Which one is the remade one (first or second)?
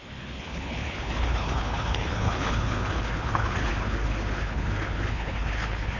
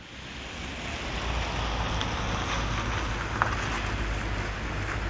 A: first